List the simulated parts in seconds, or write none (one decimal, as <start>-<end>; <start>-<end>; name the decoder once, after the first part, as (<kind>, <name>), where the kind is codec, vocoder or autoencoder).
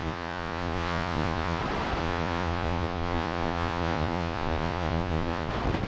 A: 0.0-1.6 (vocoder, Vocos); 2.0-5.5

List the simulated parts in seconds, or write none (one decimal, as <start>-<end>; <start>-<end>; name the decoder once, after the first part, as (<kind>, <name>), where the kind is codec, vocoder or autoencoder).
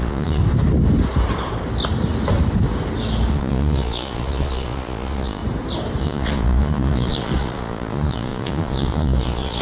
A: 0.0-0.4 (vocoder, Vocos); 3.3-5.4; 6.0-9.6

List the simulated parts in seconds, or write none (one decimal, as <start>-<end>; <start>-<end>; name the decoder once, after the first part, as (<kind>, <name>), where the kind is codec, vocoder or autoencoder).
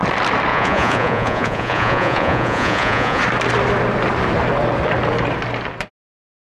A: 0.5-3.2 (vocoder, Vocos)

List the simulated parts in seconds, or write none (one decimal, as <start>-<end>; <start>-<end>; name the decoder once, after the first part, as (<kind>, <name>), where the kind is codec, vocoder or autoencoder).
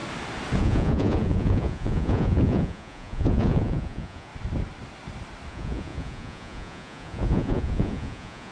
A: 0.6-4.3 (vocoder, Vocos); 5.5-8.5